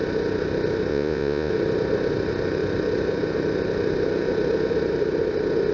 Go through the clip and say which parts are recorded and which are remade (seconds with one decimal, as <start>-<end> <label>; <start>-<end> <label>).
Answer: 0.0-0.9 recorded; 0.9-1.5 remade; 1.5-5.7 recorded